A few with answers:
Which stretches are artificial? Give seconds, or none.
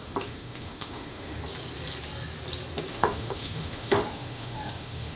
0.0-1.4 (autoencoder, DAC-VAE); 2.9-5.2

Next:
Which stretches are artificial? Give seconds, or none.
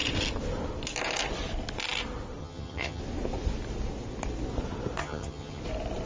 2.4-3.0 (vocoder, HiFi-GAN); 5.0-5.6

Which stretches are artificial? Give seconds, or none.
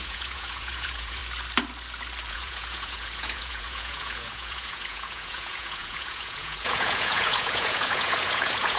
0.0-1.2 (vocoder, Vocos); 2.3-8.8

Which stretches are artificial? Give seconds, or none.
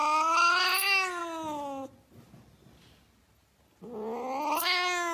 none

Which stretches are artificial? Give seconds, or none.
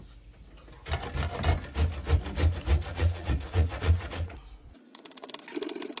2.9-5.3 (vocoder, Vocos)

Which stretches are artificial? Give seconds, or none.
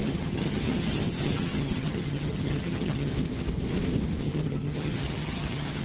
0.0-3.1 (vocoder, HiFi-GAN); 4.2-5.8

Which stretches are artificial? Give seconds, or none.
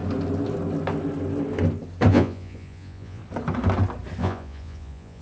2.1-3.2 (vocoder, Vocos); 4.2-5.2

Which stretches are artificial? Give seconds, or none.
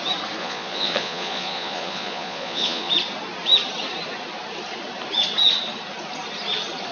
0.4-2.9 (vocoder, Vocos)